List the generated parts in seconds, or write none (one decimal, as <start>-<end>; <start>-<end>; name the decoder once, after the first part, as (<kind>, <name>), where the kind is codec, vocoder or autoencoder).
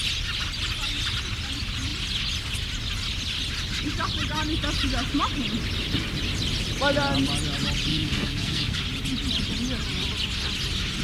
7.9-8.8 (codec, SNAC)